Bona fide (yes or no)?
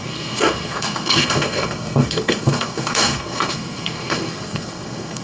no